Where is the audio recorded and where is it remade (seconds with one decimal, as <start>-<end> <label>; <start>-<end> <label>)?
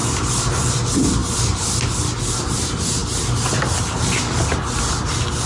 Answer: 0.0-5.5 recorded